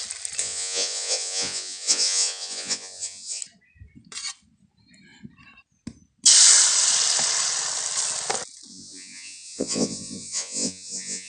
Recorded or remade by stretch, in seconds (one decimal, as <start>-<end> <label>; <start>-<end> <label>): 0.0-0.4 recorded; 0.4-3.4 remade; 3.4-8.7 recorded; 8.7-11.3 remade